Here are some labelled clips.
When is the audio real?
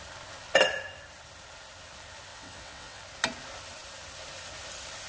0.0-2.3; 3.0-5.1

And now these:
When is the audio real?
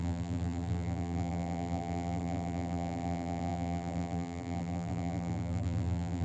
none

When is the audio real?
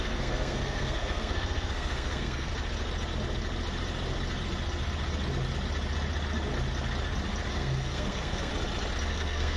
2.5-7.5; 8.5-9.1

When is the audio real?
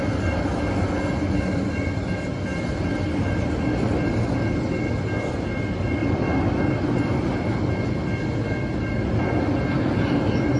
0.0-10.6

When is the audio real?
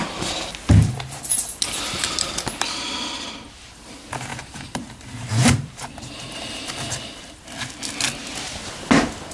0.0-0.5; 1.2-4.3; 7.4-9.3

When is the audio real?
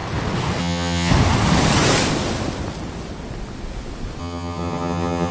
0.0-0.6; 1.1-4.2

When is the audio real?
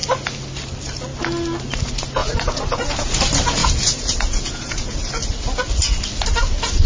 0.0-2.2; 3.2-3.6; 5.1-6.9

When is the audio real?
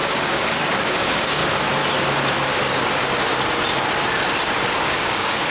1.4-4.7